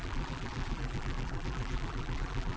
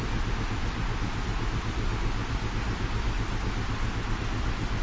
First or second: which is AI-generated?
first